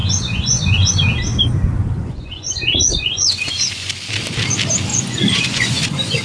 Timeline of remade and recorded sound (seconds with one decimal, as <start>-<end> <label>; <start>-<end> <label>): 0.0-0.9 remade; 0.9-2.0 recorded; 2.0-3.9 remade; 3.9-4.9 recorded; 4.9-6.2 remade